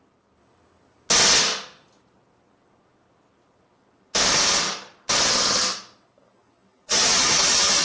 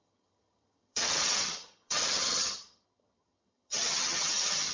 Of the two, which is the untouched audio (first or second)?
first